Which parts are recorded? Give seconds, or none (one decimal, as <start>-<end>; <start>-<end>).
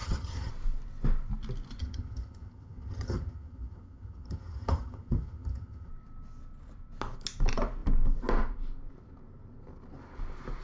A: 0.5-1.8; 5.9-10.6